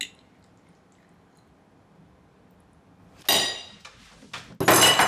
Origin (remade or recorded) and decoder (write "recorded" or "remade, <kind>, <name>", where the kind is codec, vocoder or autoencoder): recorded